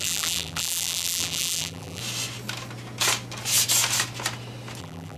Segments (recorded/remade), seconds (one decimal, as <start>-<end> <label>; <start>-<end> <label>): 0.0-2.0 remade; 2.0-4.8 recorded; 4.8-5.2 remade